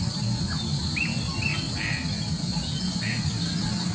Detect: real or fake real